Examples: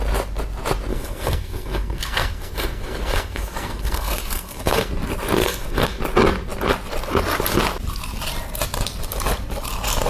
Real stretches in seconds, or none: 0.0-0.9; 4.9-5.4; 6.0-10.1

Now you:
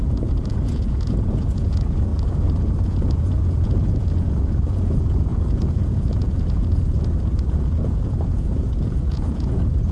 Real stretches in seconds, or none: 2.1-2.8

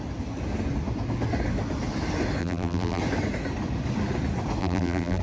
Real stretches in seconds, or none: 0.0-2.4; 3.0-4.6

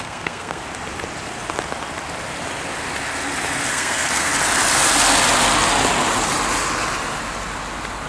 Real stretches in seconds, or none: 0.6-3.7; 4.3-8.1

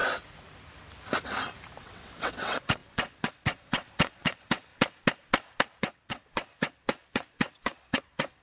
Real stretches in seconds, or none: 0.0-1.8; 4.7-5.8

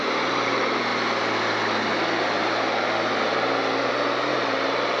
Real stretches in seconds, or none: 0.0-5.0

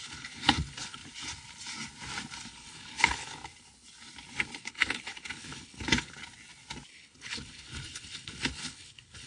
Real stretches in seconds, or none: 1.0-2.5; 3.4-4.6; 6.2-6.9

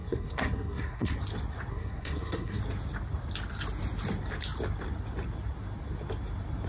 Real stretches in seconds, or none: 1.1-1.7; 2.6-6.7